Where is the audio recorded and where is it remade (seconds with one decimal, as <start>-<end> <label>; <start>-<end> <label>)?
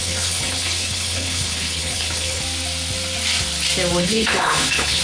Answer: 0.0-2.4 remade; 2.4-4.0 recorded; 4.0-5.0 remade